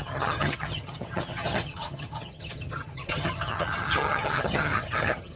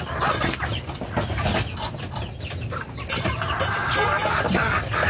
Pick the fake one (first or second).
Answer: first